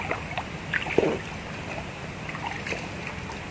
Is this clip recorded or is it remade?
remade